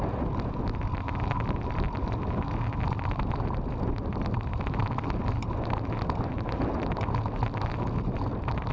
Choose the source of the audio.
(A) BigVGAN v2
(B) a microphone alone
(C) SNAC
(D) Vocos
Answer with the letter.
B